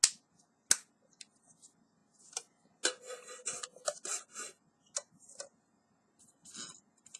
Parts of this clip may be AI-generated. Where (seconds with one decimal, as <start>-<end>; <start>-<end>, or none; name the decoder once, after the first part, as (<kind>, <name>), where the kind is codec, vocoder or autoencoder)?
none